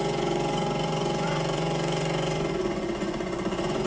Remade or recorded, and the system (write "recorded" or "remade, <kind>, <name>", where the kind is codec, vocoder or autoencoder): remade, vocoder, Vocos